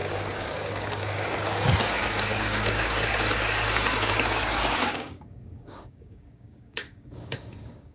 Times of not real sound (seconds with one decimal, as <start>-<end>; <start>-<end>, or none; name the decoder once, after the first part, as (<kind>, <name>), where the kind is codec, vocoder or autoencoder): 0.0-7.9 (codec, DAC)